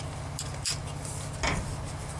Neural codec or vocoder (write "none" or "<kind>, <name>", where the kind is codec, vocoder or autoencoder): none